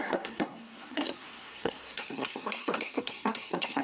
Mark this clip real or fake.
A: fake